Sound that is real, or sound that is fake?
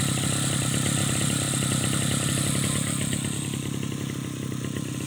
real